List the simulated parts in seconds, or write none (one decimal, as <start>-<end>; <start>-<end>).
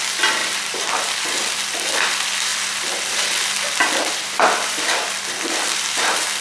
0.0-6.4